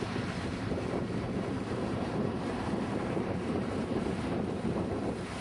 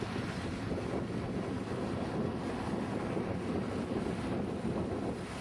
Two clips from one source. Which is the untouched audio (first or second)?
second